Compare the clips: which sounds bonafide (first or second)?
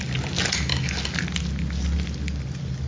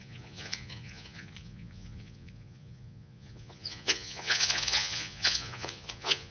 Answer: first